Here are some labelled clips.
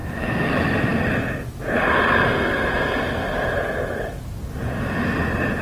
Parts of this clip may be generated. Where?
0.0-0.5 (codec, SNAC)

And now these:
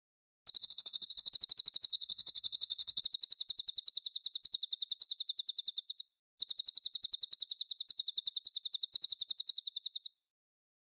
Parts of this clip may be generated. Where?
0.6-1.3 (codec, SNAC); 1.9-3.0

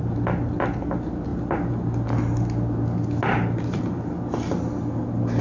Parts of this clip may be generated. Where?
none

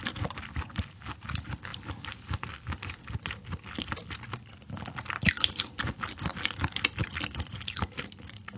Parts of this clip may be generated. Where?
none

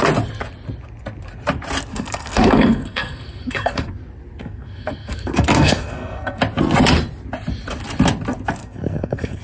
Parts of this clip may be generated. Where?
1.9-3.9 (codec, SNAC); 4.4-6.4; 8.6-9.4

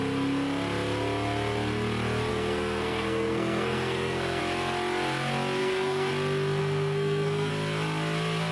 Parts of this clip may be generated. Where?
2.3-4.4 (codec, SNAC); 5.6-6.1; 6.6-7.5

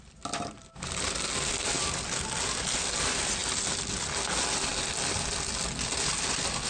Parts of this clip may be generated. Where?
none

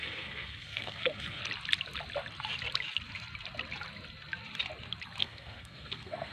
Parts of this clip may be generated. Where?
0.0-1.4 (codec, SNAC); 5.2-6.3